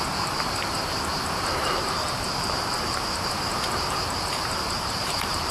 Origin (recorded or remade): remade